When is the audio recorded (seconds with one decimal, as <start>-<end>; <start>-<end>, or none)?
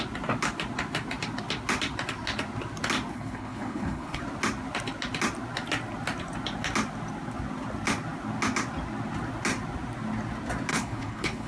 0.0-3.1; 4.2-10.7